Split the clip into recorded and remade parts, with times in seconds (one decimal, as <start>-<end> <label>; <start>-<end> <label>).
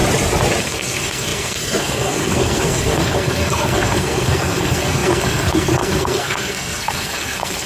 0.0-0.6 recorded; 0.6-7.7 remade